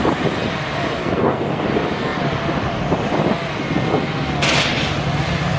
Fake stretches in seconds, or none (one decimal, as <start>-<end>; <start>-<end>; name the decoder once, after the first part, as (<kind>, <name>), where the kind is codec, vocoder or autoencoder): 1.0-1.6 (codec, SNAC)